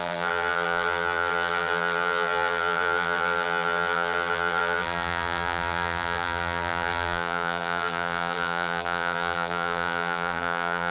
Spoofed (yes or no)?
yes